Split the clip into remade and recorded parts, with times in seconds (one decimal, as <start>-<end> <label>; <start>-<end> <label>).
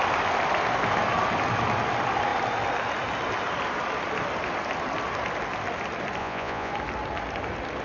0.0-6.2 recorded; 6.2-6.7 remade; 6.7-7.8 recorded